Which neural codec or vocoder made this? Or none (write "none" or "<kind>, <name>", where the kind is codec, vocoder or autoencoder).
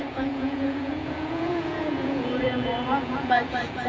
vocoder, Vocos